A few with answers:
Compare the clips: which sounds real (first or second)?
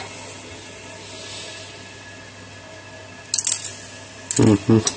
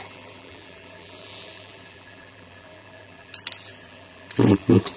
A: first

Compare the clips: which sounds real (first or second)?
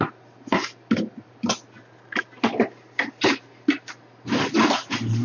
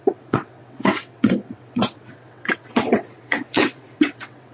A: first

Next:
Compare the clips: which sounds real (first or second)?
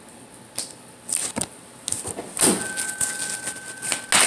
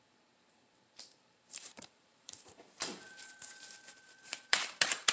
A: first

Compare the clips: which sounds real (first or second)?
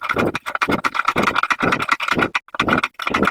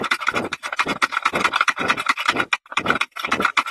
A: first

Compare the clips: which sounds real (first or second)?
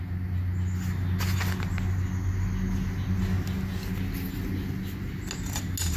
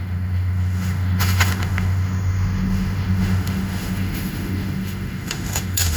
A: first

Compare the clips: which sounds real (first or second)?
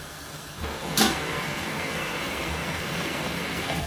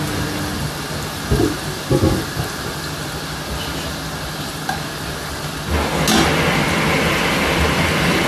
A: second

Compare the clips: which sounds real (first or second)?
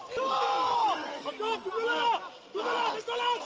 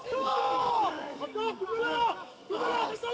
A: first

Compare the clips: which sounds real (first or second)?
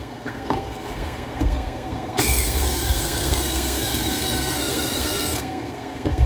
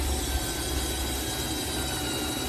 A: second